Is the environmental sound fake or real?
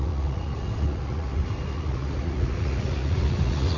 fake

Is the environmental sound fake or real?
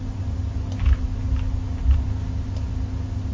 real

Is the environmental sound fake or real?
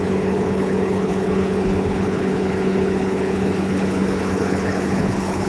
fake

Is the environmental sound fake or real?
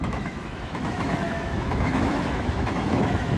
fake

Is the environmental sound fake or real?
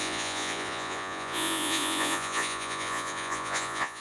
fake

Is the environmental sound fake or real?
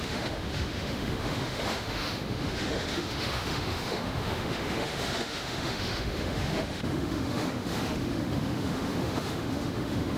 fake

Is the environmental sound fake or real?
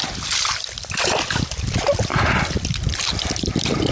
real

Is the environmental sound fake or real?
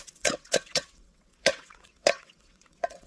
fake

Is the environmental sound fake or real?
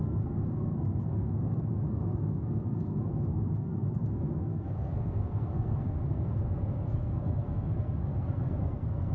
fake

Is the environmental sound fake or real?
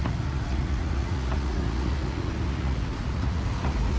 fake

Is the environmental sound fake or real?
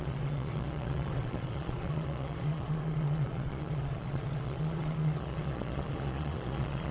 fake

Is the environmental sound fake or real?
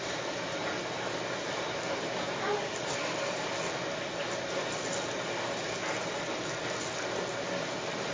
real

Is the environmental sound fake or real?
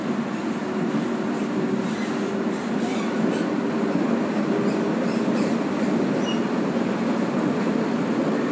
real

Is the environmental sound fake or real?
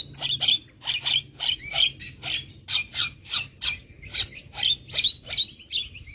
real